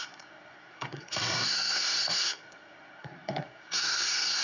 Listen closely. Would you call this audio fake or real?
fake